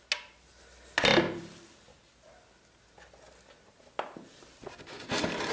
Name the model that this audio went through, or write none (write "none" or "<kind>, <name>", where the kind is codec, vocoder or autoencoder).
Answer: none